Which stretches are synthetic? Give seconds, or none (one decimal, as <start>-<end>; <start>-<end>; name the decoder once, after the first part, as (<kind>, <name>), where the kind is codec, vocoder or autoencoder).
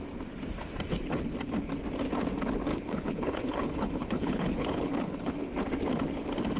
2.7-5.3 (codec, HILCodec)